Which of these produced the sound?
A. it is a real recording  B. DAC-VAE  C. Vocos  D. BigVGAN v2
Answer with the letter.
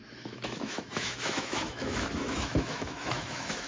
B